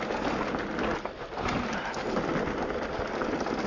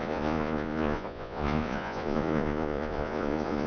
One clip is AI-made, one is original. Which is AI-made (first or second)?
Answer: second